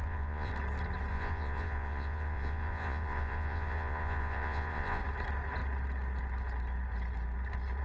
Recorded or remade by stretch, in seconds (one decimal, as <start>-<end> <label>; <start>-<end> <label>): 0.0-0.5 remade; 0.5-1.1 recorded; 1.1-5.0 remade; 5.0-7.8 recorded